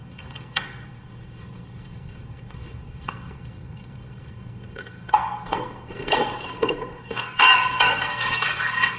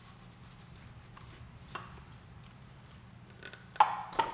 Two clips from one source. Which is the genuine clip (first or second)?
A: second